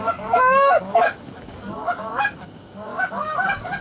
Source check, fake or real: fake